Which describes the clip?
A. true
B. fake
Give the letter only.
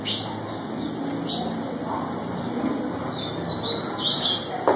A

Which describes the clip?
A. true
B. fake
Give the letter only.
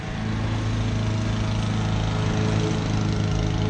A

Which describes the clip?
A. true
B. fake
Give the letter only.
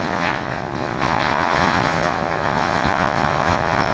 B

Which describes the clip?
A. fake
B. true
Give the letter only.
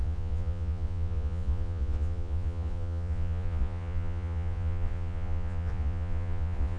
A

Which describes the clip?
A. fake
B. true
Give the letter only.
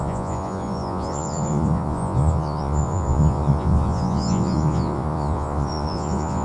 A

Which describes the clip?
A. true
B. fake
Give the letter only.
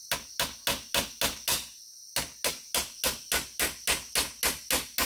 A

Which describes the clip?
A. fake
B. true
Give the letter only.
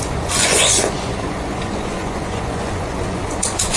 A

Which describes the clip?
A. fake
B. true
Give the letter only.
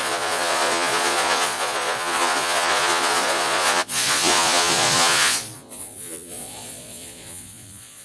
A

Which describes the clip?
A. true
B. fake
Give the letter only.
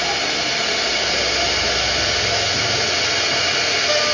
A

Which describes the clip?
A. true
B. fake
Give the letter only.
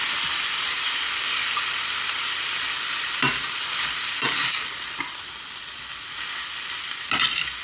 A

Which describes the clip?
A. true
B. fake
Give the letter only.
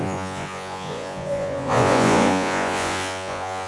B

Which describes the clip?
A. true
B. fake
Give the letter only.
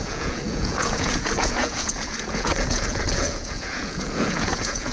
B